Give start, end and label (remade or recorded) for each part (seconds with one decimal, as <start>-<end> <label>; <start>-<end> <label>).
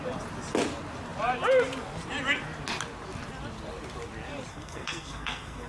0.0-4.5 recorded; 4.5-5.7 remade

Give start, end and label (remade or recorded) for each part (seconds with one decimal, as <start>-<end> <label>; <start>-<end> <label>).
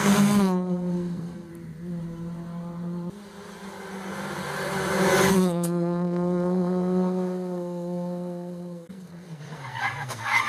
0.0-1.5 remade; 1.5-5.3 recorded; 5.3-10.5 remade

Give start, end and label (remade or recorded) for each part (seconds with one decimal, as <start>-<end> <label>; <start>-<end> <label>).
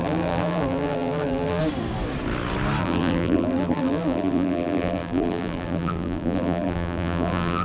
0.0-1.6 remade; 1.6-2.8 recorded; 2.8-7.6 remade